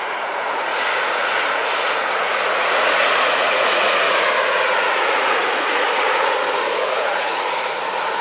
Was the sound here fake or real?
fake